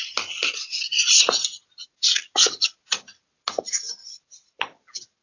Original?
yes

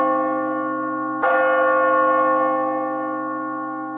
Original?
yes